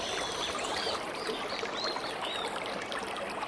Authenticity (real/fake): real